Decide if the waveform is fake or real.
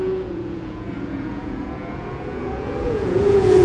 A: fake